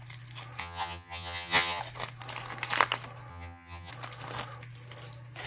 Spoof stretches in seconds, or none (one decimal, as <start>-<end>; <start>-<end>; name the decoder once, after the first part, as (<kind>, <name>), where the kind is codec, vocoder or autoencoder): 0.6-1.8 (vocoder, HiFi-GAN); 3.3-3.9